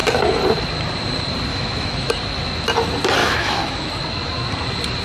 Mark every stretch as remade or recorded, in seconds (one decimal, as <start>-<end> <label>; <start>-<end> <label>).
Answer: 0.0-1.5 recorded; 1.5-2.1 remade; 2.1-3.2 recorded; 3.2-3.9 remade; 3.9-5.0 recorded